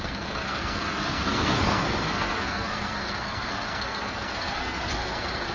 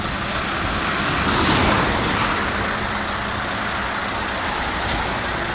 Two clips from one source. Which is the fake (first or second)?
first